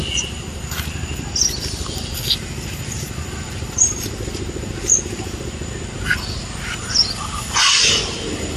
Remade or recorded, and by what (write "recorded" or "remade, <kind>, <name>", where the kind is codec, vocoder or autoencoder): remade, vocoder, BigVGAN v2